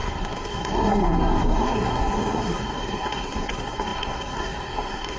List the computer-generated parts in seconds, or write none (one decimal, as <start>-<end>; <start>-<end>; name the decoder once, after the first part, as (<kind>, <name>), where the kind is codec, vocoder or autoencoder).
0.0-5.2 (codec, SNAC)